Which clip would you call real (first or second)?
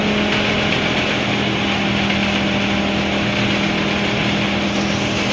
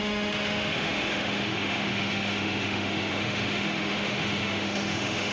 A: first